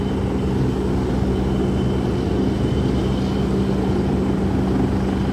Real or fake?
real